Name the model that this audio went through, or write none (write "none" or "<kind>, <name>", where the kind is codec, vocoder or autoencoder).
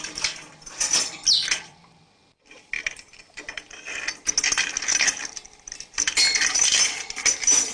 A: none